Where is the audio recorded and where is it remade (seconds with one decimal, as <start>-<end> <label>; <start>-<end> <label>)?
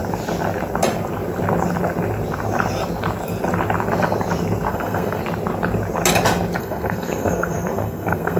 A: 0.0-4.7 recorded; 4.7-5.2 remade; 5.2-6.6 recorded; 6.6-8.4 remade